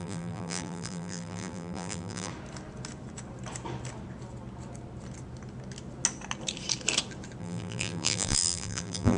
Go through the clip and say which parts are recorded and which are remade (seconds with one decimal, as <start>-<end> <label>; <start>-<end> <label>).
0.0-2.3 remade; 2.3-7.4 recorded; 7.4-9.2 remade